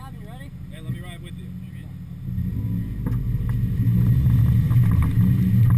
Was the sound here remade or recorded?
recorded